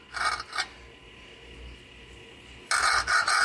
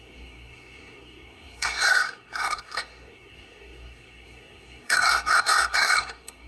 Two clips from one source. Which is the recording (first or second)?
first